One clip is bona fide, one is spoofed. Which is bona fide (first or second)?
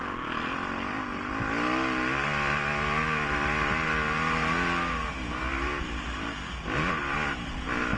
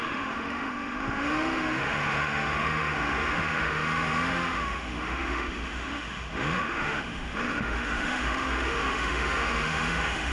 first